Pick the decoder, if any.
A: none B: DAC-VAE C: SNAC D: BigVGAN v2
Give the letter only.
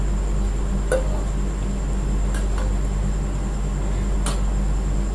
A